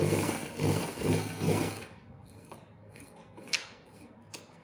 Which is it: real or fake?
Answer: fake